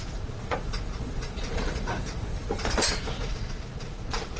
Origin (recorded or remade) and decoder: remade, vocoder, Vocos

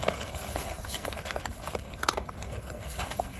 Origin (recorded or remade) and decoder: remade, codec, SNAC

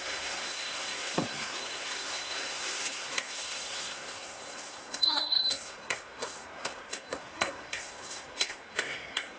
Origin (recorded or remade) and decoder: remade, codec, SNAC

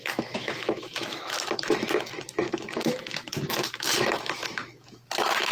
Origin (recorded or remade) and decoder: remade, autoencoder, DAC-VAE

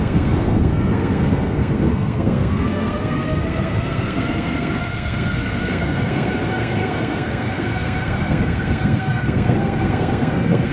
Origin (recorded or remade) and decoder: remade, codec, SNAC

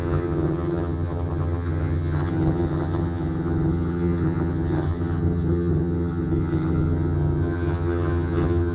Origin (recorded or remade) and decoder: remade, vocoder, HiFi-GAN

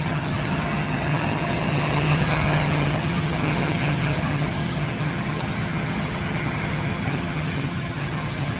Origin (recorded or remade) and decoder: remade, vocoder, HiFi-GAN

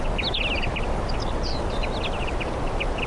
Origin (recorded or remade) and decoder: recorded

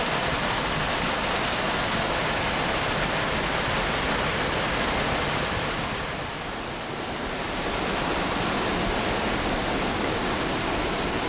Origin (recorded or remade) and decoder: recorded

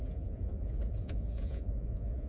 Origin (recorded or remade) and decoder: remade, vocoder, Vocos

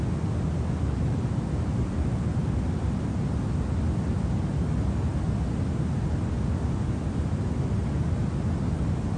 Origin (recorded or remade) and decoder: recorded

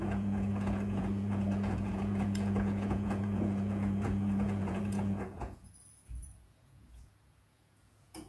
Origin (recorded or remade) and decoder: remade, vocoder, Vocos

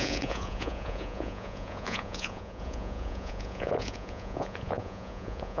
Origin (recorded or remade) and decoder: remade, vocoder, Vocos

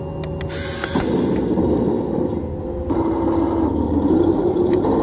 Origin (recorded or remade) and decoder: recorded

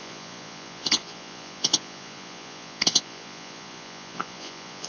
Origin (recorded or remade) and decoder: remade, vocoder, Vocos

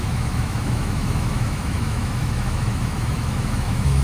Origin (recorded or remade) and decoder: remade, autoencoder, DAC-VAE